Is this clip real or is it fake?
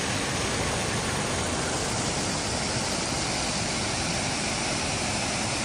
real